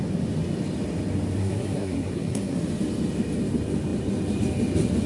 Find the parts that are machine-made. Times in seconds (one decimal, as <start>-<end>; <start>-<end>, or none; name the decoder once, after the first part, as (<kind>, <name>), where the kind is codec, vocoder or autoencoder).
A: 1.4-2.6 (codec, SNAC)